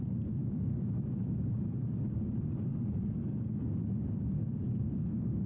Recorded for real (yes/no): no